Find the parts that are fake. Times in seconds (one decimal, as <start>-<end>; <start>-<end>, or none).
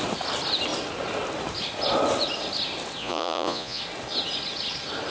3.0-3.8